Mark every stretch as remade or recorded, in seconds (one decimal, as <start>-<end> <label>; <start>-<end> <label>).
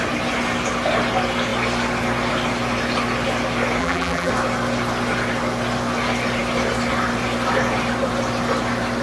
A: 0.0-3.8 recorded; 3.8-4.3 remade; 4.3-9.0 recorded